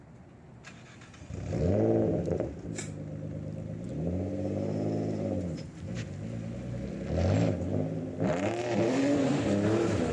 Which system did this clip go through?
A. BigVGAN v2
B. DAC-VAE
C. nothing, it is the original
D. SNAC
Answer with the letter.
C